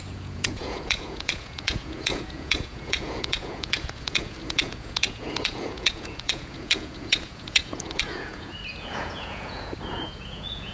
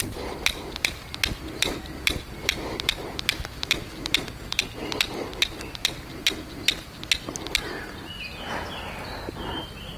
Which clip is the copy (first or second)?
first